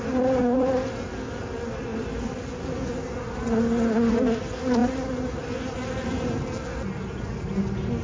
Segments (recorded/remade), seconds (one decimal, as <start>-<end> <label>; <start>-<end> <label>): 0.0-0.4 recorded; 0.4-0.9 remade; 0.9-8.0 recorded